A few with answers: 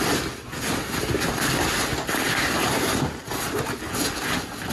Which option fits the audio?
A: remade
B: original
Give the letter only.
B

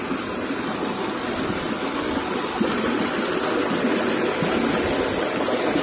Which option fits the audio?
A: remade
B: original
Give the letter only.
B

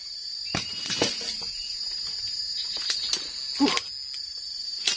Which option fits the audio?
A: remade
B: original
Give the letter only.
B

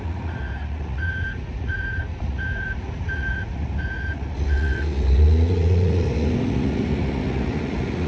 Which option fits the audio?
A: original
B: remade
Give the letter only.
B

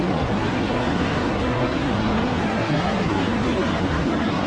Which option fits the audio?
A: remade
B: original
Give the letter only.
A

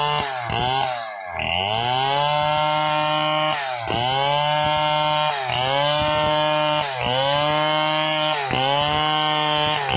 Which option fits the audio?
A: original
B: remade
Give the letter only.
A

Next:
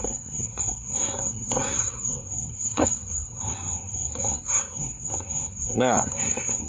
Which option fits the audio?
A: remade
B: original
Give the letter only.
A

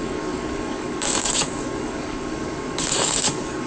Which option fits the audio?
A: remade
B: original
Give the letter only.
A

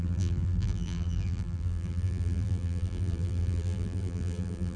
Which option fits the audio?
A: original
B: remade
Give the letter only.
B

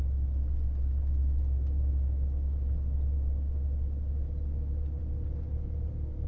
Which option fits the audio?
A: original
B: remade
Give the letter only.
A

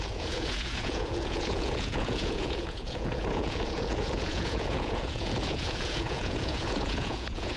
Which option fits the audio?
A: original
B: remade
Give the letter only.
B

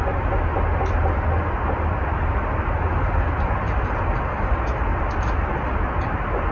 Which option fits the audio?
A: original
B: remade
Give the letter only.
A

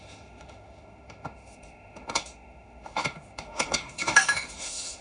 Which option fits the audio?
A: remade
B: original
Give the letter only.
A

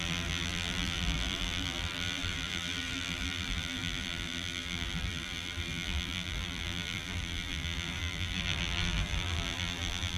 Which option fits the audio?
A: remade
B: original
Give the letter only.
A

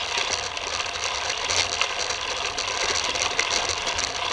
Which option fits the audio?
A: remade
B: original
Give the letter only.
B